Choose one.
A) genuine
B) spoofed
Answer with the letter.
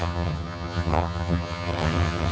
B